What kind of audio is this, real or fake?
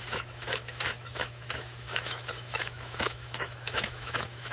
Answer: fake